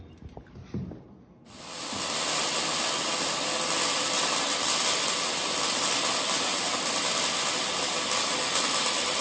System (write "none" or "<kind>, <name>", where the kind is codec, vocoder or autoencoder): none